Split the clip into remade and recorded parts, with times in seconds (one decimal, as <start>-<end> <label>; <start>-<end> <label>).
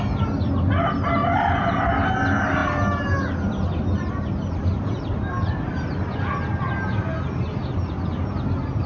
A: 0.0-8.9 recorded